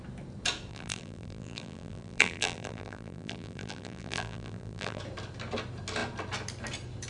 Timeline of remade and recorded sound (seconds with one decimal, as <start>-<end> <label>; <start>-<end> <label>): 0.0-0.7 recorded; 0.7-5.0 remade; 5.0-7.1 recorded